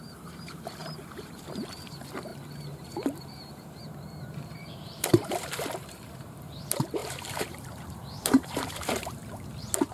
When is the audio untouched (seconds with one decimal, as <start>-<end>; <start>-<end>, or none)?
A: 9.2-9.9